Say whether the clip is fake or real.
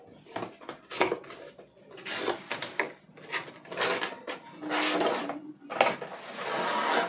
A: real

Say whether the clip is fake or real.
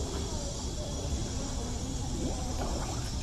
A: real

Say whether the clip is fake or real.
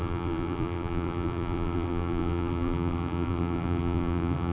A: fake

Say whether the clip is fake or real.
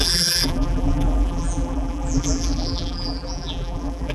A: fake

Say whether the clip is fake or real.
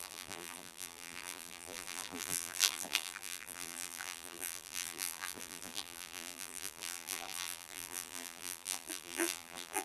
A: fake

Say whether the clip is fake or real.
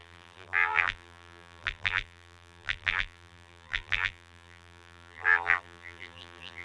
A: fake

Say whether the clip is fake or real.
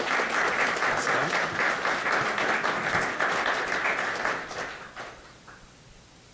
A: real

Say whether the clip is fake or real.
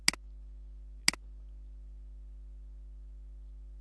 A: real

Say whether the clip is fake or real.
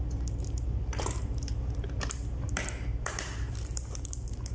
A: fake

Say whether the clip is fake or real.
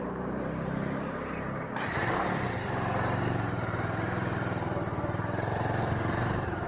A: fake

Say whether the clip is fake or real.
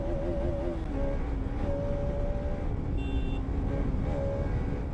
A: real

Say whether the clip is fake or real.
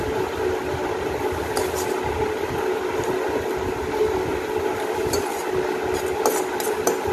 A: real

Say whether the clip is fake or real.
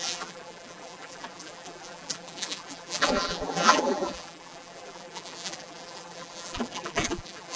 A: fake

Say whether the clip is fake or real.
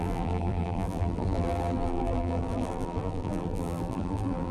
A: fake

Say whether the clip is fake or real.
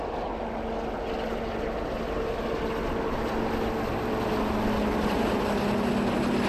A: real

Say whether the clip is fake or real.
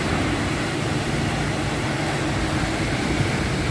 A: fake